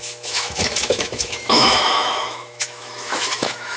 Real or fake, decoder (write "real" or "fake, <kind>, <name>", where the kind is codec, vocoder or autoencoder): fake, autoencoder, DAC-VAE